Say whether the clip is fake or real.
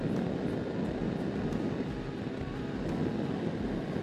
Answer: real